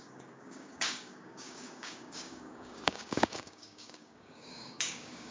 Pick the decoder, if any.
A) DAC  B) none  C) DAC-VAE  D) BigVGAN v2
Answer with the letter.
A